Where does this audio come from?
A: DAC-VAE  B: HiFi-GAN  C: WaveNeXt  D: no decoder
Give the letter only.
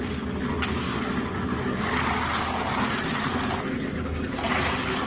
D